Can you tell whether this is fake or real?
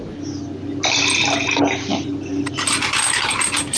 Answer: real